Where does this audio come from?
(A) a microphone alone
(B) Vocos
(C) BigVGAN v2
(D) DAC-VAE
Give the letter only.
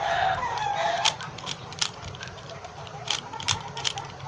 C